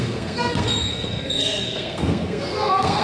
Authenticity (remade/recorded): remade